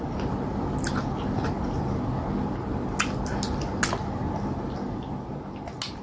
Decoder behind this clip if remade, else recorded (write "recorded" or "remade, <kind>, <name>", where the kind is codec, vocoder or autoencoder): recorded